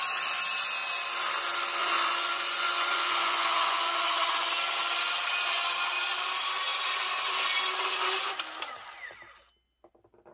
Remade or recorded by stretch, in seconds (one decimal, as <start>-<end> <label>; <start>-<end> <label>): 0.0-1.8 recorded; 1.8-4.5 remade; 4.5-10.3 recorded